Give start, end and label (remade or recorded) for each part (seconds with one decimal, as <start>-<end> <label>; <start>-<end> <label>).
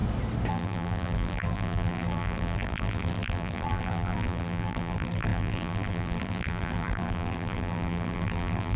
0.0-0.5 recorded; 0.5-8.8 remade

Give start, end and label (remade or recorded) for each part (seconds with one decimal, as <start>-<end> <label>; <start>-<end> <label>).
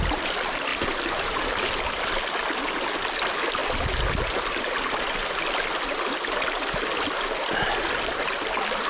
0.0-8.9 recorded